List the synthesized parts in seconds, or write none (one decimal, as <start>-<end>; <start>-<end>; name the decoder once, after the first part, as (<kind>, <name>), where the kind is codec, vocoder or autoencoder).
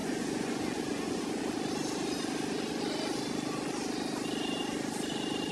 0.0-1.4 (vocoder, Vocos)